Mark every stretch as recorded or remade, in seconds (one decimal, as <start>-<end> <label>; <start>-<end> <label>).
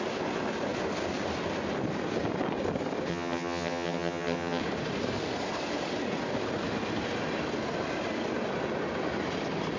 0.0-3.1 recorded; 3.1-4.6 remade; 4.6-9.8 recorded